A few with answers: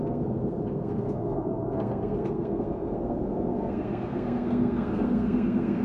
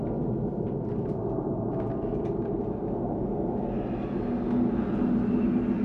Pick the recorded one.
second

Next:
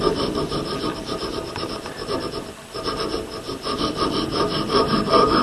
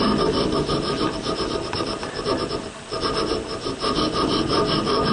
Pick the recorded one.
second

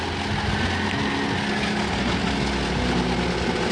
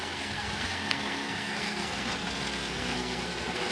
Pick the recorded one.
first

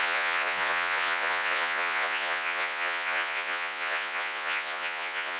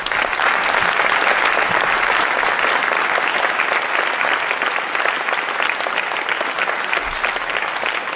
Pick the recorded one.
second